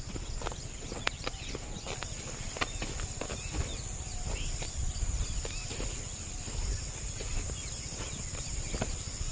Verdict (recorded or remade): recorded